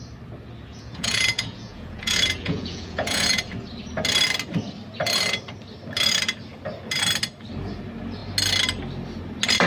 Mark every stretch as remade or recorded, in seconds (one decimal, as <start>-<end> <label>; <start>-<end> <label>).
0.0-0.7 recorded; 0.7-3.4 remade; 3.4-9.7 recorded